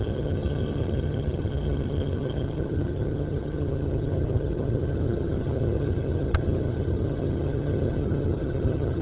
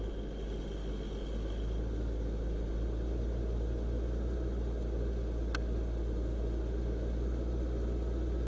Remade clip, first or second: first